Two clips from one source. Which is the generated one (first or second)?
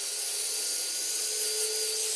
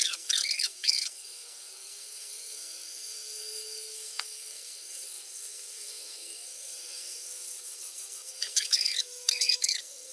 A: second